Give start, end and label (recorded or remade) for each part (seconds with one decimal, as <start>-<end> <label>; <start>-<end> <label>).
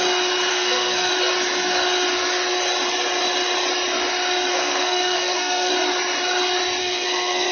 0.0-0.5 recorded; 0.5-1.1 remade; 1.1-4.5 recorded; 4.5-5.7 remade; 5.7-6.8 recorded; 6.8-7.5 remade